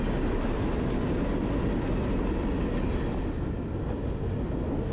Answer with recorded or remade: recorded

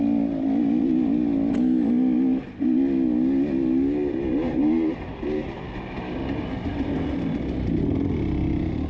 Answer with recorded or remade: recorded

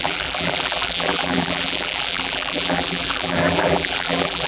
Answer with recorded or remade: remade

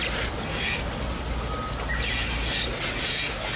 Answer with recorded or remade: recorded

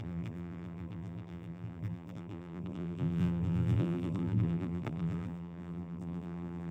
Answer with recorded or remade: remade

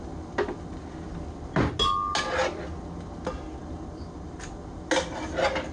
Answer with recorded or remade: recorded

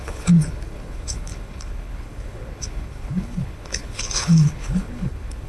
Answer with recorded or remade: remade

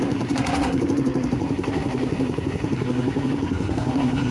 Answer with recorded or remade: remade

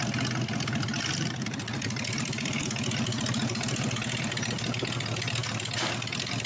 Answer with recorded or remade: recorded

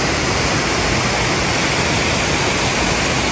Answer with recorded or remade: recorded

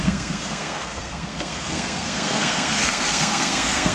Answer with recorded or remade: remade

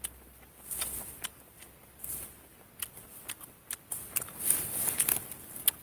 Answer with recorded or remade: recorded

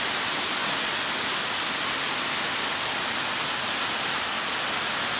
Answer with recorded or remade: recorded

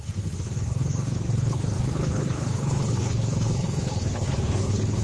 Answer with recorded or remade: remade